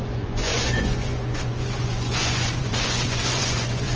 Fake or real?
fake